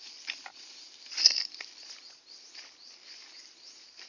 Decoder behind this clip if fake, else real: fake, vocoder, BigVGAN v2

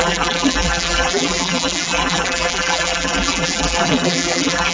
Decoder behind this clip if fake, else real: fake, vocoder, BigVGAN v2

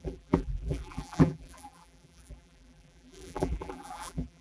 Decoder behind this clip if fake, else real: fake, vocoder, BigVGAN v2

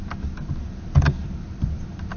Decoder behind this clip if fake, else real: real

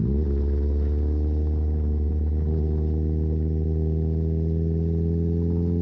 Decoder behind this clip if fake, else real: real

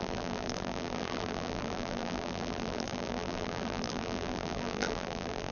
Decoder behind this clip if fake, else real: fake, vocoder, BigVGAN v2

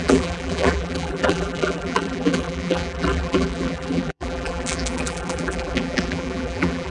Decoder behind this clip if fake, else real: fake, vocoder, BigVGAN v2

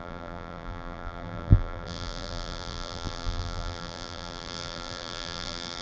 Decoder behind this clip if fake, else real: fake, vocoder, BigVGAN v2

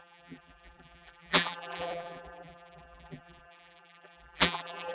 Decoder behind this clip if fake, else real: fake, vocoder, BigVGAN v2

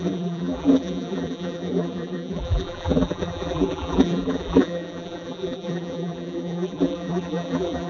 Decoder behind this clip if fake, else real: fake, vocoder, BigVGAN v2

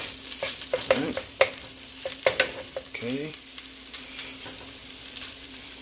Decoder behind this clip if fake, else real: fake, vocoder, BigVGAN v2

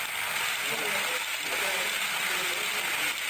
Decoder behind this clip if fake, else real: real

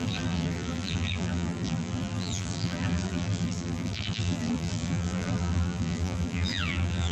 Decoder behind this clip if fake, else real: fake, vocoder, BigVGAN v2